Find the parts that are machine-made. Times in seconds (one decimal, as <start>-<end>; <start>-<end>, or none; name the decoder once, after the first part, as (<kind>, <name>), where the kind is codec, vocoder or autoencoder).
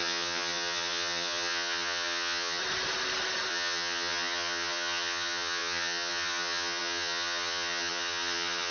0.0-2.6 (vocoder, HiFi-GAN); 3.5-8.7